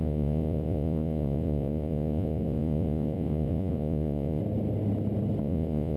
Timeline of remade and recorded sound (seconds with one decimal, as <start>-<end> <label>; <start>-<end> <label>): 0.0-4.4 remade; 4.4-5.4 recorded; 5.4-6.0 remade